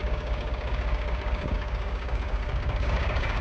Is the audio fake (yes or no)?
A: yes